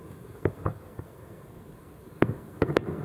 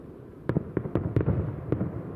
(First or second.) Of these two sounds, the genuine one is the second